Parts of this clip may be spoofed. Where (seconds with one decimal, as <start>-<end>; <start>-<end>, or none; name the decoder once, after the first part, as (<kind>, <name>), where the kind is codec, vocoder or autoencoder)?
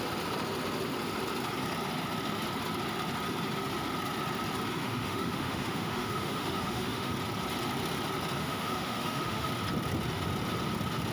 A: 4.8-7.1 (autoencoder, DAC-VAE); 8.4-9.5